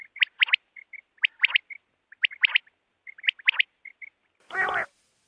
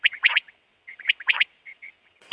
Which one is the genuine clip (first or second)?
first